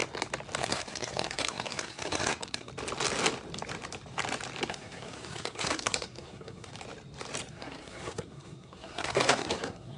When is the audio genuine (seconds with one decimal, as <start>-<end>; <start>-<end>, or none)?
0.0-0.6; 2.7-4.7; 6.7-7.5